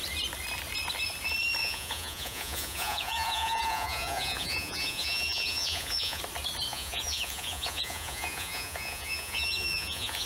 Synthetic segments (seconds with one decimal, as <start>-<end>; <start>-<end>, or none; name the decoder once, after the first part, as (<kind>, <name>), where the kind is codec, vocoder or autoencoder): 1.6-6.2 (vocoder, Vocos); 6.7-10.3